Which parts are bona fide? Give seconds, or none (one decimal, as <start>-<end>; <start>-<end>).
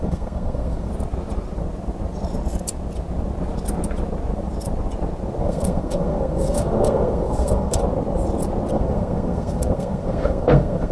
0.9-5.4; 7.8-8.7